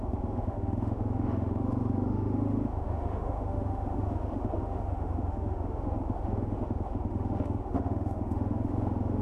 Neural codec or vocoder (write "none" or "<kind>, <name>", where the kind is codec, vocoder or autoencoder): autoencoder, DAC-VAE